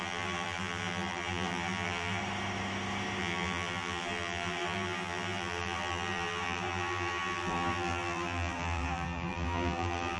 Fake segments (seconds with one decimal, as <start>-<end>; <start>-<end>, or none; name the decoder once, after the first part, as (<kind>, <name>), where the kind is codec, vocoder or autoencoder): 0.0-2.2 (vocoder, BigVGAN v2); 3.2-10.2